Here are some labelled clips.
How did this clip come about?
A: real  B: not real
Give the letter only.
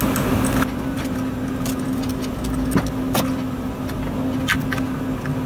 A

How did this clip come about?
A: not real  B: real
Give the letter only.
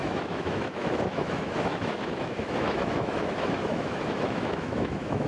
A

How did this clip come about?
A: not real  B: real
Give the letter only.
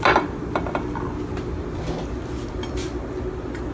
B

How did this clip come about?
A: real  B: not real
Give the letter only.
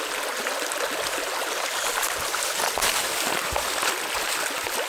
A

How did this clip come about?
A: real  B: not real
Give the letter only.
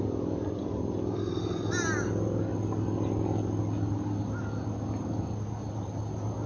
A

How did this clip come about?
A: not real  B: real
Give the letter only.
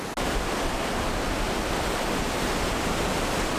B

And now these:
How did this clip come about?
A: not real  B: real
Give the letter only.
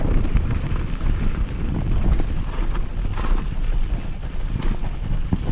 B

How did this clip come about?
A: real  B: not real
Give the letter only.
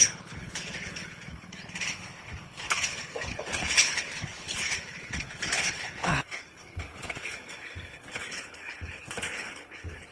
B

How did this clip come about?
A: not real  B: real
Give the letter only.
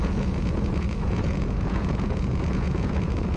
A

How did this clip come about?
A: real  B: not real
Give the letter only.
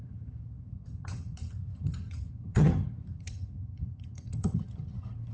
B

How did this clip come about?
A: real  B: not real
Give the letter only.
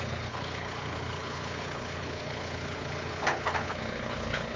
B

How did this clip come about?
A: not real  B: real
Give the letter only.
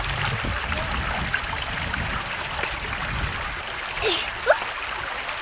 B